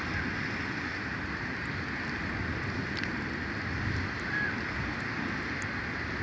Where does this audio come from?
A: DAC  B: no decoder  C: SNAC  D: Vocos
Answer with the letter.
B